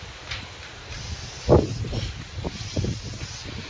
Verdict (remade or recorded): recorded